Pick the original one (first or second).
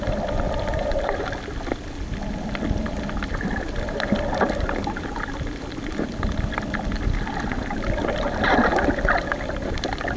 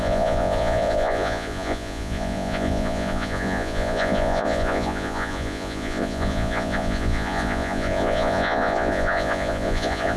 first